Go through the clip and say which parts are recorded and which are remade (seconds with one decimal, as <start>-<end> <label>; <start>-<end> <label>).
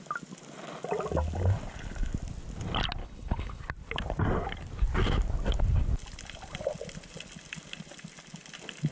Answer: 0.0-3.0 recorded; 3.0-3.6 remade; 3.6-8.9 recorded